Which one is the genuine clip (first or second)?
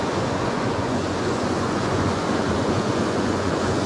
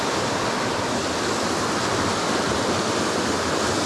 second